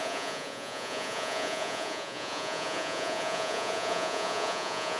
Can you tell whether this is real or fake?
fake